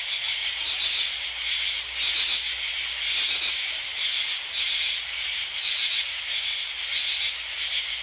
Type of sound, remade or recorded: recorded